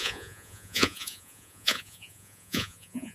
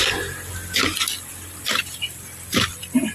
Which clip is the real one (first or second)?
second